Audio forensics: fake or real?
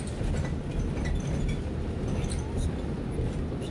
real